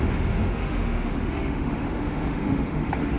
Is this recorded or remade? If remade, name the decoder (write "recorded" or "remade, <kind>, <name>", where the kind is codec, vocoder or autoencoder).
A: remade, autoencoder, DAC-VAE